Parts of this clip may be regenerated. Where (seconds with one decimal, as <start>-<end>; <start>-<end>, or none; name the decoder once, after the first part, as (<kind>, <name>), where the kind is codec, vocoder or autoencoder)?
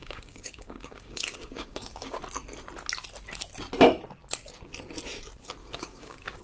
0.0-2.2 (codec, DAC); 5.6-6.4